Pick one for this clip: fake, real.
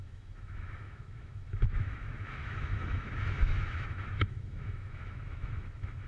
fake